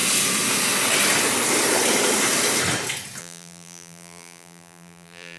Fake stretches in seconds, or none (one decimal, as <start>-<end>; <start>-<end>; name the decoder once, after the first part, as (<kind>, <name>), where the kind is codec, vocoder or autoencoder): 3.2-5.4 (vocoder, BigVGAN v2)

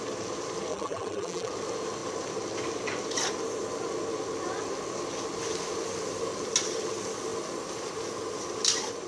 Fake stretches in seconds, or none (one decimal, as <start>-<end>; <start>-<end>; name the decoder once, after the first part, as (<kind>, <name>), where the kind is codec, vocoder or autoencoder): 0.7-1.5 (vocoder, BigVGAN v2)

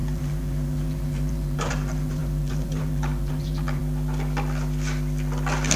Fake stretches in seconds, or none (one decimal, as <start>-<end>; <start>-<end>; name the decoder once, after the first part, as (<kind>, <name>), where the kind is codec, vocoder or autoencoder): 0.0-3.8 (vocoder, BigVGAN v2)

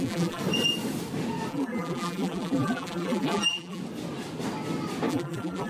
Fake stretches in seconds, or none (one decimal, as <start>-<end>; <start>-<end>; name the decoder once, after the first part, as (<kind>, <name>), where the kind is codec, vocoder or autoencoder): 0.0-0.4 (vocoder, BigVGAN v2); 1.5-3.8; 5.1-5.7

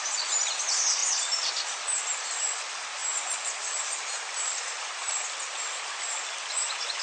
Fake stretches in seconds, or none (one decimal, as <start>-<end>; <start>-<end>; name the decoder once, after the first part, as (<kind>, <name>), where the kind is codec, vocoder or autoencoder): 3.0-6.5 (vocoder, BigVGAN v2)

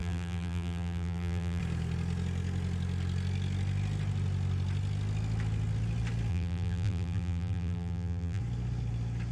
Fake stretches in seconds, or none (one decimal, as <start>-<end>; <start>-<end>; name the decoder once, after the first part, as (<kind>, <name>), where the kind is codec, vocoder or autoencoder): 0.0-1.6 (vocoder, BigVGAN v2); 6.3-8.4

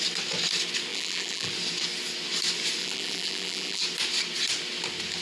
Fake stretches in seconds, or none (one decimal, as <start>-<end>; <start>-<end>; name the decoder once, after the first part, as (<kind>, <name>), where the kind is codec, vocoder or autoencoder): 0.9-1.5 (vocoder, BigVGAN v2); 2.8-3.8